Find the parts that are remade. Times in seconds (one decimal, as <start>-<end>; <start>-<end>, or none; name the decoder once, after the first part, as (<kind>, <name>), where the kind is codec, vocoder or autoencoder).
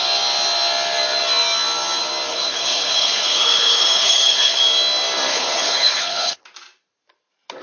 2.3-4.6 (codec, HILCodec); 5.3-6.4